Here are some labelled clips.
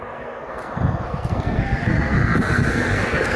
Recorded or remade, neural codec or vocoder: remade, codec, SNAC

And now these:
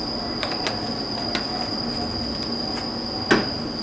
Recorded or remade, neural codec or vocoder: recorded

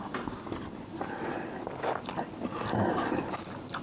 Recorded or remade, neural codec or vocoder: recorded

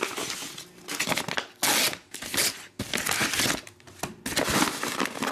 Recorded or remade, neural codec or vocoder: recorded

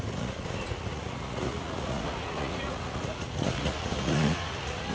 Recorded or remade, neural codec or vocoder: remade, vocoder, Vocos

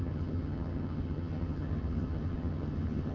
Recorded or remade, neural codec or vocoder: remade, vocoder, HiFi-GAN